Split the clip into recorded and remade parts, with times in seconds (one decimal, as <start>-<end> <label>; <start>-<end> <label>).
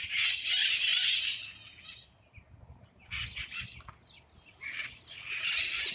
0.0-5.9 recorded